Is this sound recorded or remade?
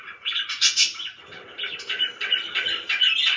recorded